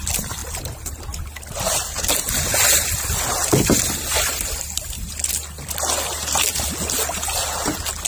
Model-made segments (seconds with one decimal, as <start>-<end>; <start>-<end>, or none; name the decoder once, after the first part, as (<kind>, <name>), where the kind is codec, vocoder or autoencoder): 0.4-1.0 (vocoder, BigVGAN v2)